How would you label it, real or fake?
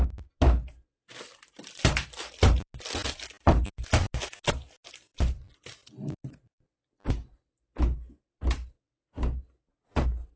real